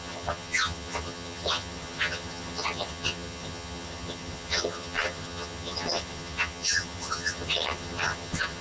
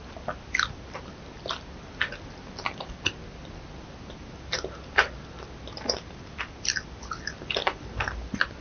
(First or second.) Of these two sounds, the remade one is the first